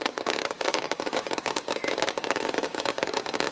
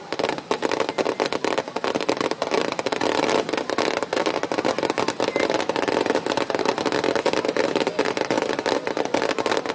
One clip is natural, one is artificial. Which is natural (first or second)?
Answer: second